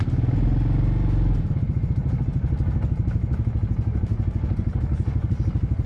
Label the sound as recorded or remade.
recorded